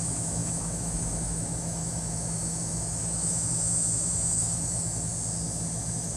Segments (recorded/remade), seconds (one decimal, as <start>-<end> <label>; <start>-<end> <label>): 0.0-5.1 remade; 5.1-5.8 recorded; 5.8-6.2 remade